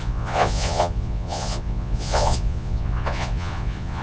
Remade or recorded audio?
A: remade